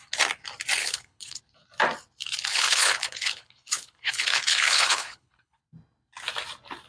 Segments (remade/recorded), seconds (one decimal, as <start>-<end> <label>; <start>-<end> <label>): 0.0-0.8 recorded; 0.8-1.4 remade; 1.4-2.5 recorded; 2.5-5.6 remade; 5.6-6.9 recorded